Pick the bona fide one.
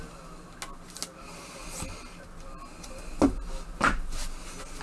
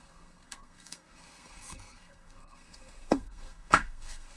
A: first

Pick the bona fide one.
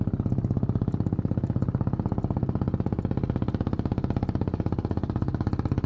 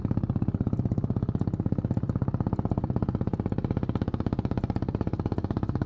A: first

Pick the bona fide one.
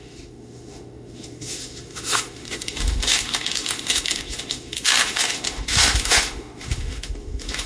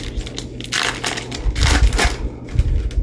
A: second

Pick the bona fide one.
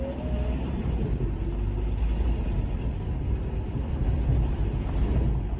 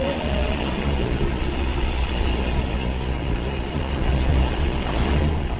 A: first